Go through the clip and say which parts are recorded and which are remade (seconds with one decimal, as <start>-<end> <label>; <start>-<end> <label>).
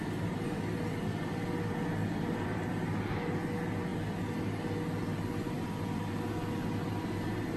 0.0-2.0 recorded; 2.0-2.7 remade; 2.7-7.6 recorded